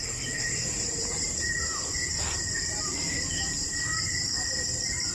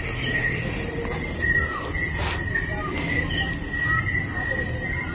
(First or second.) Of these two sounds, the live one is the second